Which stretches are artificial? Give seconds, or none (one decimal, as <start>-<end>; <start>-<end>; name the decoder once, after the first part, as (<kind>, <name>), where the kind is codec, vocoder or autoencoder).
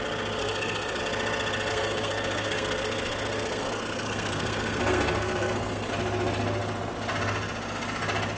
0.4-1.0 (codec, SNAC); 1.7-5.9